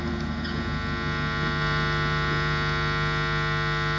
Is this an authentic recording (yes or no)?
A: yes